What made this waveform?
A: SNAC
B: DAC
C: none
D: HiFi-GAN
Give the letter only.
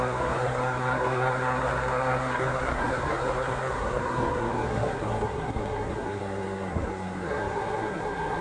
A